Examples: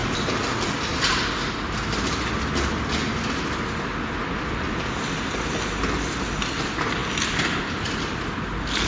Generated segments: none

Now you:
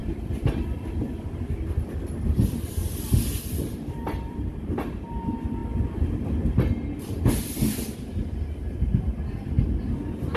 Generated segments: 0.0-1.2 (vocoder, BigVGAN v2); 3.3-4.5